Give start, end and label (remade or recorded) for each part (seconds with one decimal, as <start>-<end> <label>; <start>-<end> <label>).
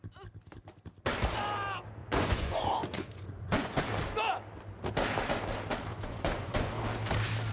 0.0-2.0 recorded; 2.0-3.8 remade; 3.8-5.9 recorded; 5.9-6.7 remade; 6.7-7.5 recorded